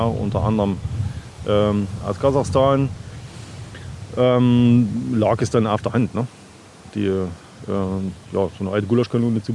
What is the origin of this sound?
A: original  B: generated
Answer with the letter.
A